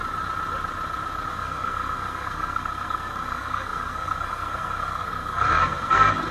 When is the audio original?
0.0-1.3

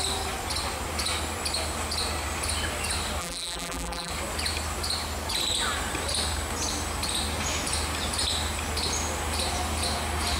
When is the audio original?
0.0-3.2; 4.1-10.4

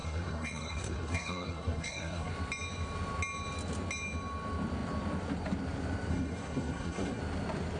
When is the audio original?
2.3-6.1; 7.2-7.8

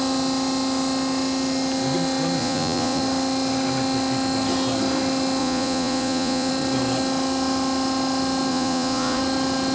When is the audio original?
0.0-2.4; 3.0-5.4; 6.5-8.5; 9.2-9.7

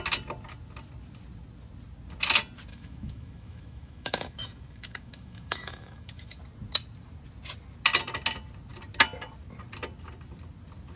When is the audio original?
0.0-2.7; 6.4-11.0